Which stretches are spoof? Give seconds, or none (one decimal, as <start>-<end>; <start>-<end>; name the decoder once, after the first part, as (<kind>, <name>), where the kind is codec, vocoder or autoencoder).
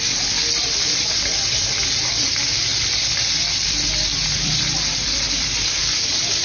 0.0-6.4 (vocoder, BigVGAN v2)